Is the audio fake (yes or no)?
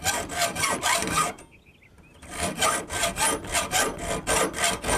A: no